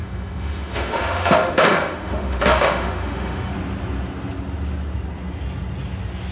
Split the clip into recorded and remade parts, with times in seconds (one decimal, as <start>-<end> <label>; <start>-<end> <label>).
0.0-3.5 remade; 3.5-6.3 recorded